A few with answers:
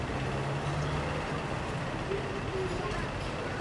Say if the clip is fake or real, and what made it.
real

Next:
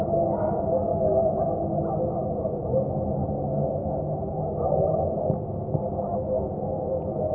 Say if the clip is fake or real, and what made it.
real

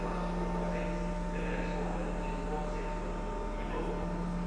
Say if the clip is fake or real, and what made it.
real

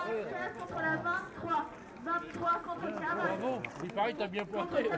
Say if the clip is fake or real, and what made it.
real